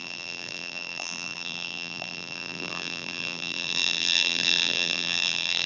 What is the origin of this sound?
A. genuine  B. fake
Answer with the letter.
B